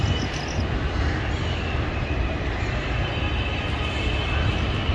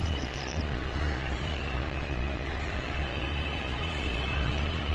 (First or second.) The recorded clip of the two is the first